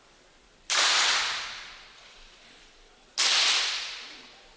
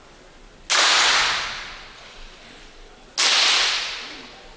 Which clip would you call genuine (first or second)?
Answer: second